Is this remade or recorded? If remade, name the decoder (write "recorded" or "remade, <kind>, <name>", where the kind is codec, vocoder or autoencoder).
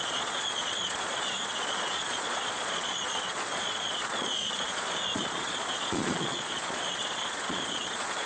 remade, vocoder, Vocos